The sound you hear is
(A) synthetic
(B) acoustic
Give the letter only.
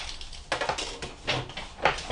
B